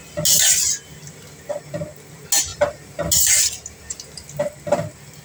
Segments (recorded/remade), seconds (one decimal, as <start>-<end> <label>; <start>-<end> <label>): 0.0-5.2 recorded